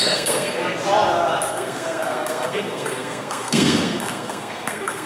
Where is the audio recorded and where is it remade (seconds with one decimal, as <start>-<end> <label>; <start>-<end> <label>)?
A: 0.0-0.6 remade; 0.6-1.5 recorded; 1.5-5.1 remade